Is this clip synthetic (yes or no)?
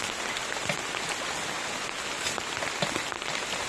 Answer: no